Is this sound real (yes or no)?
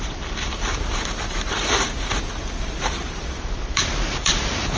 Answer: no